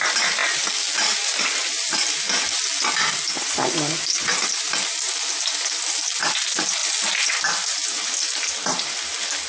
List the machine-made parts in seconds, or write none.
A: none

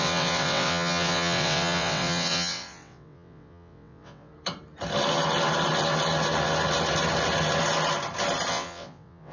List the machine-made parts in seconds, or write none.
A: 0.0-4.3; 8.5-9.3

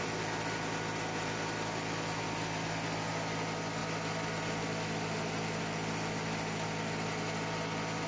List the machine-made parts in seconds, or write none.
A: none

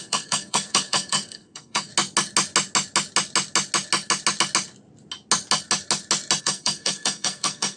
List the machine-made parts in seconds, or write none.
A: 0.0-1.9; 6.4-7.8

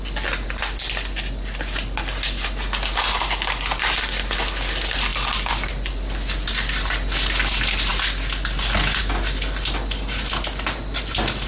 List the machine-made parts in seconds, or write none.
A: none

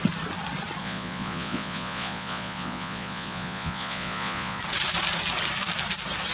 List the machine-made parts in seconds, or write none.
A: 0.8-4.6

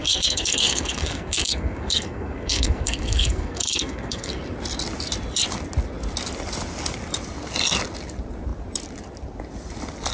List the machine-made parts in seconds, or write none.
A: 0.0-4.4

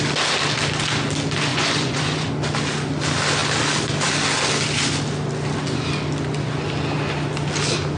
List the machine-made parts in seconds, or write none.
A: 1.5-2.3